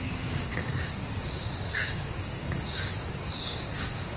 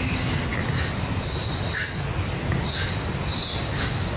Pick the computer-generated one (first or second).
first